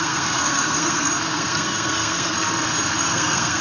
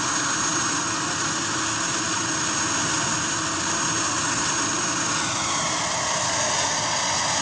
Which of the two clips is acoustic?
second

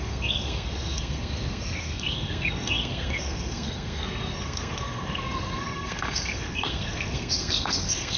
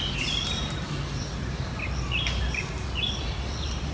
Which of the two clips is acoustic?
second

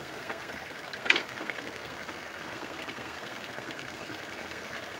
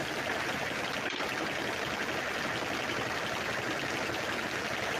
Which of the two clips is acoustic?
second